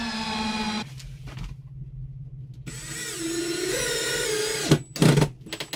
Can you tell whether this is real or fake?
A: real